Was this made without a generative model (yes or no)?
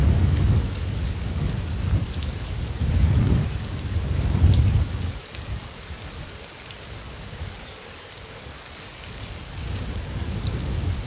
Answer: no